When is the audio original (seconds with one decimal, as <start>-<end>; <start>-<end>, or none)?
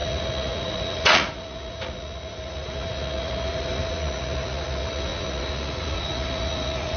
none